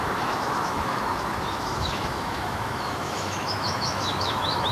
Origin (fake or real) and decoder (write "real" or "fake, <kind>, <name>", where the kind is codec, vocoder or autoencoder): fake, autoencoder, DAC-VAE